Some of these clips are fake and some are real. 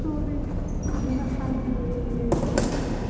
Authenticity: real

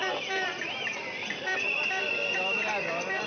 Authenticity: fake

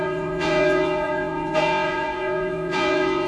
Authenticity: fake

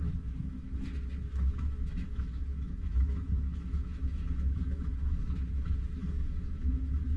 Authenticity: fake